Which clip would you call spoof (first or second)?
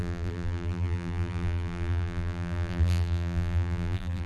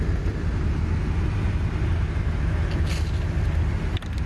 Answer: first